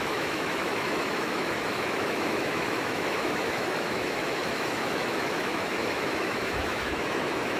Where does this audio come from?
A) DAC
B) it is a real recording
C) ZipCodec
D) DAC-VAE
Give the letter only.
D